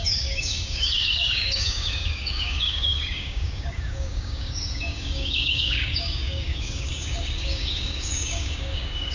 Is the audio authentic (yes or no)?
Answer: no